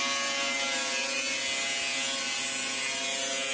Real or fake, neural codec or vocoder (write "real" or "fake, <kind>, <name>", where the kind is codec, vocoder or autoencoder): real